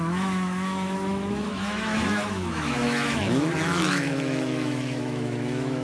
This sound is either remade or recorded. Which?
remade